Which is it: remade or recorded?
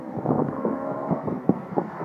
remade